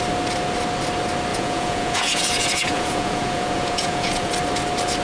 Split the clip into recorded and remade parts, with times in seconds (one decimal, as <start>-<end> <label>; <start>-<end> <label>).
0.0-1.3 recorded; 1.3-4.3 remade; 4.3-5.0 recorded